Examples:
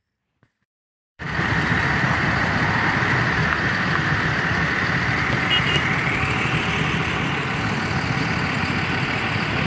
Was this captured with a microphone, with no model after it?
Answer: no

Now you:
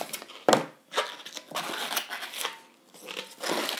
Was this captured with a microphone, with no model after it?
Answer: yes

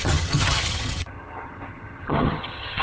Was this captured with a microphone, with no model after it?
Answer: no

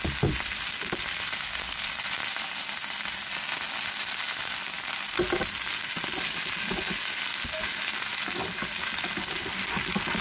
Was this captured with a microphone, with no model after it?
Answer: yes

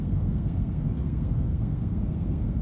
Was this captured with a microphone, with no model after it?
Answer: no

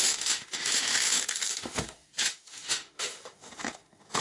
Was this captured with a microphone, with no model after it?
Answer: no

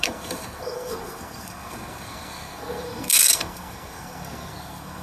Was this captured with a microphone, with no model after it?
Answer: no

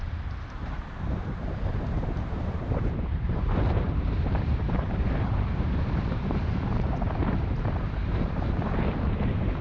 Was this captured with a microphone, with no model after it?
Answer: no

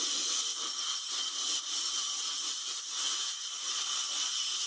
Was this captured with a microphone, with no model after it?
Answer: yes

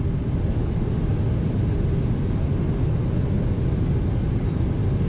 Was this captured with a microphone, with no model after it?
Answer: yes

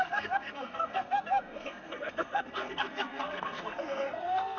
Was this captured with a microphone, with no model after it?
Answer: no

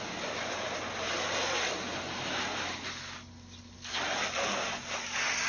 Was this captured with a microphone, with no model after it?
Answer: yes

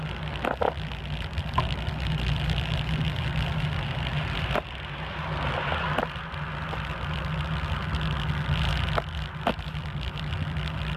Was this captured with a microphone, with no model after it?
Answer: yes